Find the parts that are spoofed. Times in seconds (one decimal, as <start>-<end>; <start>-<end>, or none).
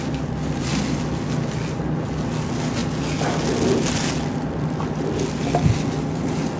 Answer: none